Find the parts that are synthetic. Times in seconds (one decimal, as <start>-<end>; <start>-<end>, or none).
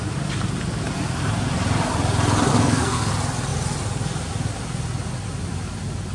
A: 2.5-3.1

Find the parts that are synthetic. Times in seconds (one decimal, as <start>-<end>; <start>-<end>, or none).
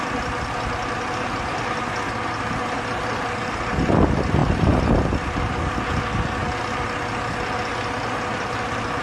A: none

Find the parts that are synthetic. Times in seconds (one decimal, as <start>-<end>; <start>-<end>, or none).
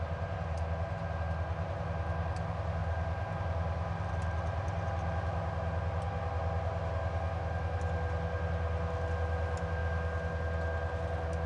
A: none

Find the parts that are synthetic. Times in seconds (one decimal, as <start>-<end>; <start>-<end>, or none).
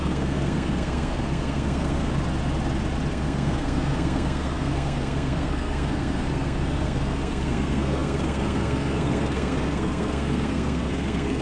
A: 0.0-2.1; 3.1-11.4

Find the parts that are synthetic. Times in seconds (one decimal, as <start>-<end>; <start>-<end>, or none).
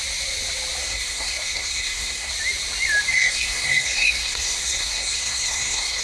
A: 0.8-2.3; 3.1-6.0